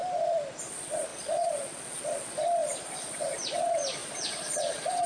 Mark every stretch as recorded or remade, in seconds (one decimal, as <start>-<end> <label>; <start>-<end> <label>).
0.0-0.6 recorded; 0.6-5.1 remade